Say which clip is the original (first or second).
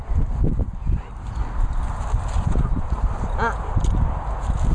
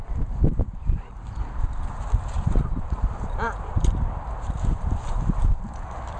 first